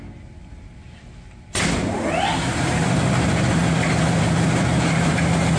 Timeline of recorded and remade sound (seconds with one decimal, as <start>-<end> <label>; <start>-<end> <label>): 0.0-5.6 recorded